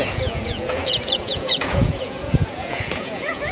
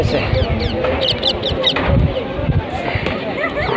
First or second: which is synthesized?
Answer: first